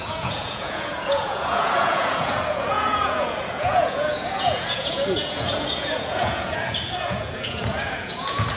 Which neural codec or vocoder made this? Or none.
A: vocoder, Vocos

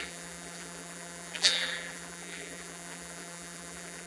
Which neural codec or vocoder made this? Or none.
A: vocoder, BigVGAN v2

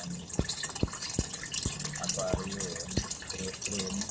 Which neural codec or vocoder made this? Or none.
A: none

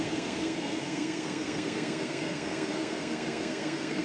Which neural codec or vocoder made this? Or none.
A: codec, SNAC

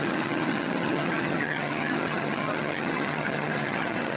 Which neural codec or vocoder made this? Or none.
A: vocoder, HiFi-GAN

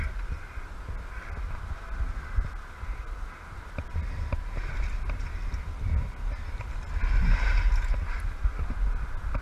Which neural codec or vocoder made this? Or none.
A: none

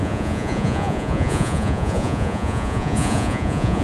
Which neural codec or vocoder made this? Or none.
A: vocoder, Vocos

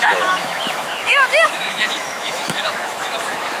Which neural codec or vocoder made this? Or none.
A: autoencoder, DAC-VAE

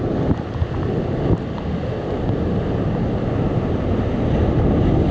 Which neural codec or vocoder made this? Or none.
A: none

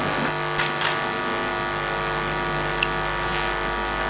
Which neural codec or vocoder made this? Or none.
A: none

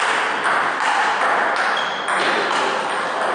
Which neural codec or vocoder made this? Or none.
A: none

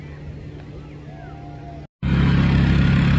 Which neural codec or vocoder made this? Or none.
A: none